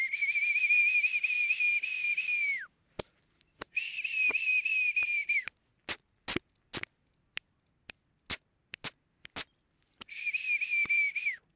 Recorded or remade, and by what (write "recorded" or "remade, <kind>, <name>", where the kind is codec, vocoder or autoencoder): recorded